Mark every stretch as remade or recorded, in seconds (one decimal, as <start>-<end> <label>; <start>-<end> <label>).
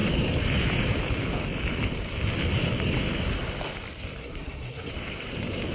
0.0-4.2 recorded; 4.2-4.9 remade; 4.9-5.7 recorded